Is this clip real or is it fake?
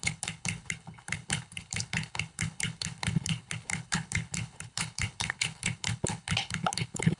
fake